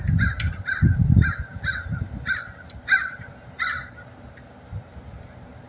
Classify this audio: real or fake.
real